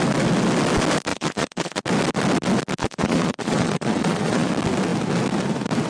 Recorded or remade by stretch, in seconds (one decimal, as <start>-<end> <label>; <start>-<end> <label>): 0.0-1.1 recorded; 1.1-1.8 remade; 1.8-2.8 recorded; 2.8-4.5 remade; 4.5-5.9 recorded